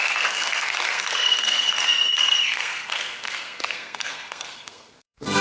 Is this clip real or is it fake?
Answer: fake